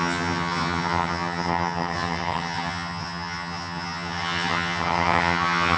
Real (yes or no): no